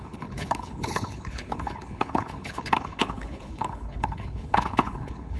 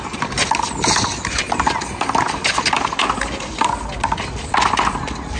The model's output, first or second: first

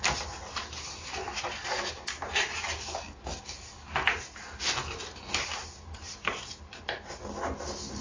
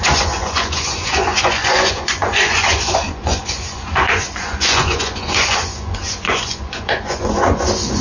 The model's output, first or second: second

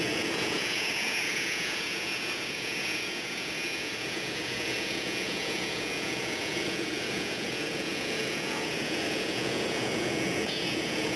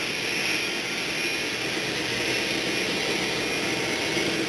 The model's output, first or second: first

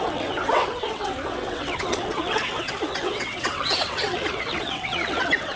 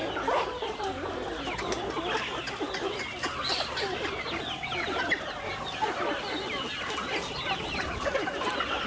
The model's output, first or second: first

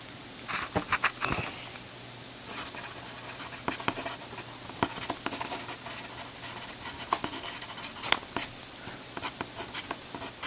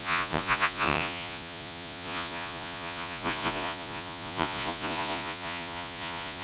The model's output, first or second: second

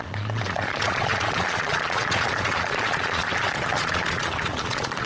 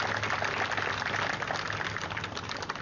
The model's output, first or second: first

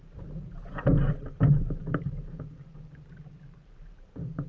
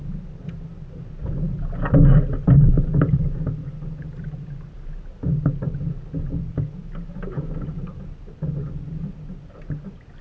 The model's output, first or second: first